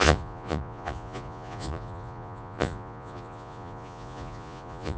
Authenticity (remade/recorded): remade